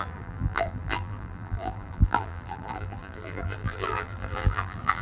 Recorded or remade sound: remade